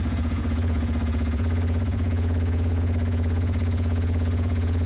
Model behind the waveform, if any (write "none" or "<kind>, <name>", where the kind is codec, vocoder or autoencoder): vocoder, Vocos